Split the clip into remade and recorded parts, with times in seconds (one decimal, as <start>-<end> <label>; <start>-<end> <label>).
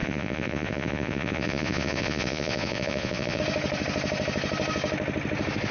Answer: 0.0-3.4 remade; 3.4-5.7 recorded